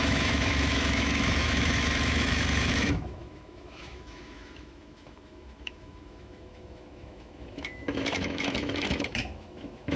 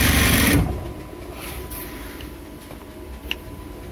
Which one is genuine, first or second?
second